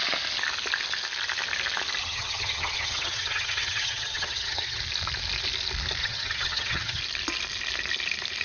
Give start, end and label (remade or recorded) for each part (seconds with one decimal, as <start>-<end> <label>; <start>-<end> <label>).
0.0-2.0 recorded; 2.0-4.8 remade; 4.8-6.0 recorded; 6.0-7.0 remade; 7.0-8.4 recorded